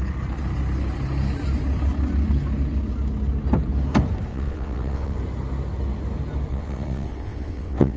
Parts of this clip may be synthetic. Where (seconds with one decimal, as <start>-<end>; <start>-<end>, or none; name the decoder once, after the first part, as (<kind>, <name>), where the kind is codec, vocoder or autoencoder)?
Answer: 4.3-5.2 (vocoder, WaveNeXt); 6.5-8.0